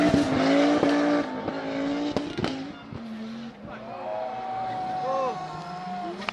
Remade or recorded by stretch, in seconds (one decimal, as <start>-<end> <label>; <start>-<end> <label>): 0.0-6.3 recorded